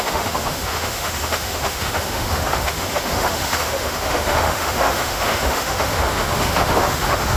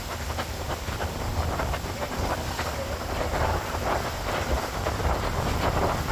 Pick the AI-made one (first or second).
first